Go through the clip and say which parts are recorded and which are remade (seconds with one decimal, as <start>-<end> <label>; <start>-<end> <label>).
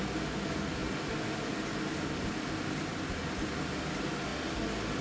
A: 0.0-2.9 recorded; 2.9-3.7 remade; 3.7-5.0 recorded